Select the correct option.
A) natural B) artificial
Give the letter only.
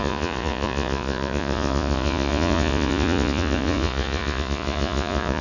B